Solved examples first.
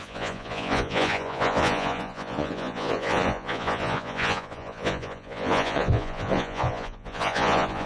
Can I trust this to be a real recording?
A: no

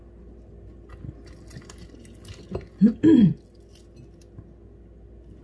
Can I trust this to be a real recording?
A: yes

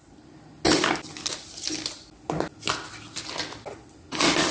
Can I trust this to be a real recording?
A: yes